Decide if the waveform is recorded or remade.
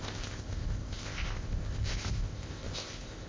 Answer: remade